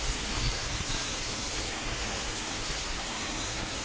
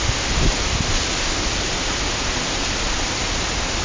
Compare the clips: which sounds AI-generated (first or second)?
first